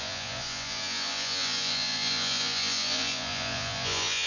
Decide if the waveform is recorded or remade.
remade